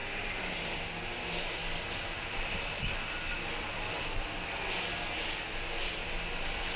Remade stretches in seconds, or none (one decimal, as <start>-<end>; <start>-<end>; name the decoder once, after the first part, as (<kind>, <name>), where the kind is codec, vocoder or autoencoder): none